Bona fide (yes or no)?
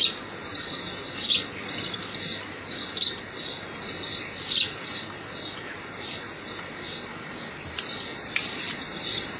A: yes